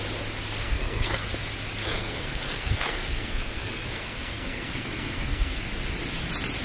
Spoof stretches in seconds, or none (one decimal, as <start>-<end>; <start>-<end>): 0.6-1.3; 1.8-5.6